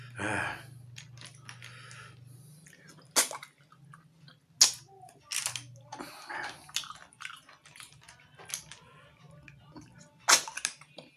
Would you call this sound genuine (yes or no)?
yes